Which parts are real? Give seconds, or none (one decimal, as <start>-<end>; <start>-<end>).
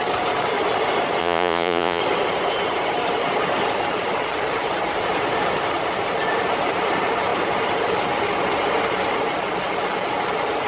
0.0-1.2; 2.0-10.7